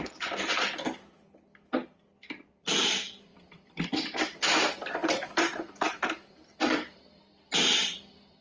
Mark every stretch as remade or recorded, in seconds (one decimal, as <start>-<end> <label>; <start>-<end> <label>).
0.0-3.3 recorded; 3.3-3.9 remade; 3.9-5.0 recorded; 5.0-7.0 remade; 7.0-8.4 recorded